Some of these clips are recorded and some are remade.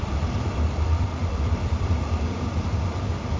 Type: remade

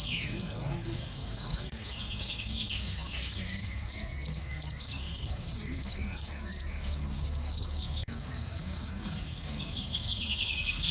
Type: remade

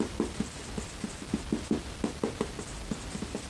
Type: recorded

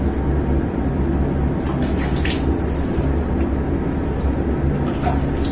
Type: recorded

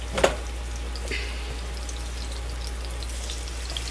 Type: recorded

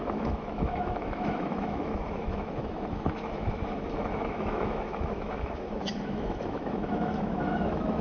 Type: remade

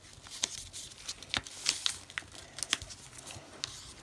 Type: recorded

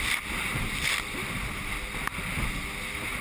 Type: recorded